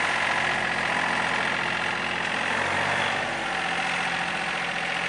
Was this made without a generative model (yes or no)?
yes